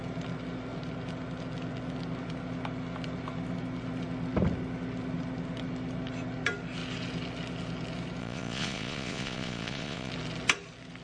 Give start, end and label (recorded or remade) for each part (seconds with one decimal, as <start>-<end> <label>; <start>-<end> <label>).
0.0-8.2 recorded; 8.2-10.1 remade; 10.1-11.0 recorded